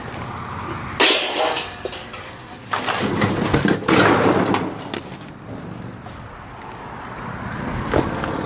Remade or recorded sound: recorded